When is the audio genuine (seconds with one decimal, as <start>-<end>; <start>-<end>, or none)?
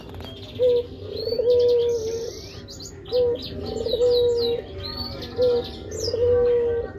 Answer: 0.0-7.0